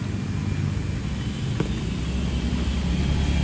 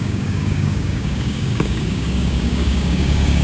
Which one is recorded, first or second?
first